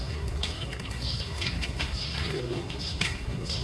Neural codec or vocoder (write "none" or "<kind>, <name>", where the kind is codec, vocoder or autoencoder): codec, SNAC